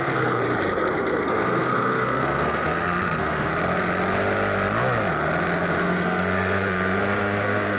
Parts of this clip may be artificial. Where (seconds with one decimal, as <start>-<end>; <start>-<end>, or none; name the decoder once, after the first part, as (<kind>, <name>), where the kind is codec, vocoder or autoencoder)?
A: 0.0-0.4 (codec, SNAC); 0.9-3.5; 5.8-7.8